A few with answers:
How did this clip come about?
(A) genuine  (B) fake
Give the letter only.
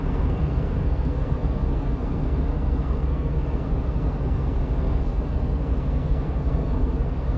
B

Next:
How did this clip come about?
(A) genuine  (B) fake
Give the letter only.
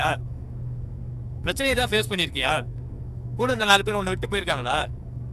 B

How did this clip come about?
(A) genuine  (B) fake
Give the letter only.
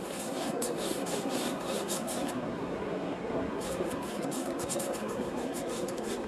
B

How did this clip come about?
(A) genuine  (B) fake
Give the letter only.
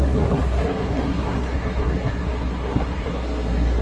B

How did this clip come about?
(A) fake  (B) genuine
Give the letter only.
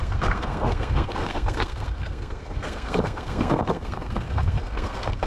A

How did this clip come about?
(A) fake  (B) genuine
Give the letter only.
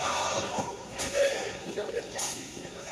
A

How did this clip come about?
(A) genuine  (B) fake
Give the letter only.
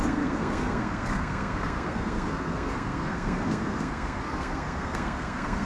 B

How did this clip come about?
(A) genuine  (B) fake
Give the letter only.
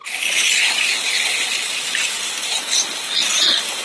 A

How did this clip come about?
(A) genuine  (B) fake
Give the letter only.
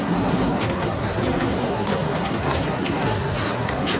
B